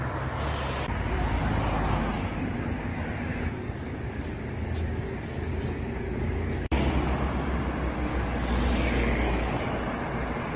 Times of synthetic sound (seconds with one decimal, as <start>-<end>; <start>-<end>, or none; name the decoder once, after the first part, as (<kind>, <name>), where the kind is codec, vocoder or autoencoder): 2.9-6.9 (codec, DAC); 8.1-9.6